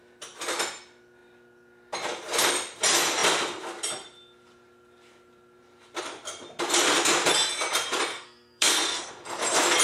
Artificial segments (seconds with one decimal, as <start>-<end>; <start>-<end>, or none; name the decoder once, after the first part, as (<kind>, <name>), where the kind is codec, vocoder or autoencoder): 8.1-9.1 (codec, SNAC)